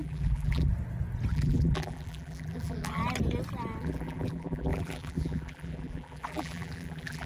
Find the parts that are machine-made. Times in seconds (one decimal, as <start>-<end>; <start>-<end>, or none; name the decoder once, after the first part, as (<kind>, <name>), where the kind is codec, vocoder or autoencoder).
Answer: 0.0-0.7 (vocoder, BigVGAN v2); 1.3-3.0; 3.8-7.3